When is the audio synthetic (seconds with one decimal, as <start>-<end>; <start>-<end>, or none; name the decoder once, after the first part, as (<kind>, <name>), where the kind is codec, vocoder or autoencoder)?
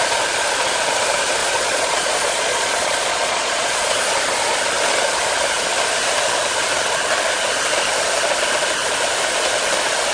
1.4-4.1 (vocoder, Vocos)